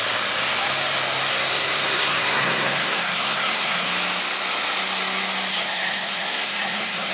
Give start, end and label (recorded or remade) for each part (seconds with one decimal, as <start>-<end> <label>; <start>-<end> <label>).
0.0-1.3 recorded; 1.3-3.9 remade; 3.9-5.5 recorded; 5.5-7.1 remade